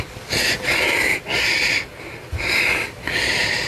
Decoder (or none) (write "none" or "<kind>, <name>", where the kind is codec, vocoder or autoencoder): none